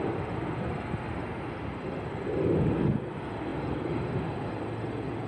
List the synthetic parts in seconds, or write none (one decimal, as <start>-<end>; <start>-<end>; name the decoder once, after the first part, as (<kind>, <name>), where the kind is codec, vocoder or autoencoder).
none